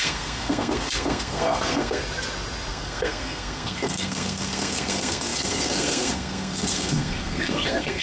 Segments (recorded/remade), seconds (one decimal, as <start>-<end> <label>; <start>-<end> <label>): 0.0-2.0 remade; 2.0-2.7 recorded; 2.7-8.0 remade